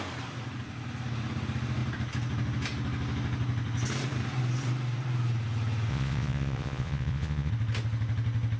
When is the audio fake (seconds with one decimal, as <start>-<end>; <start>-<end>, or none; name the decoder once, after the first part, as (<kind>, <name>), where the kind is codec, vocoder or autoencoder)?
5.9-7.5 (vocoder, Vocos)